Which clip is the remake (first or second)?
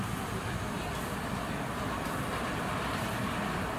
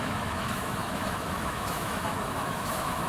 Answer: second